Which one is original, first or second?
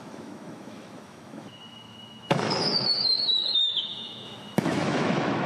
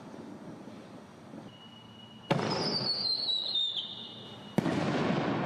second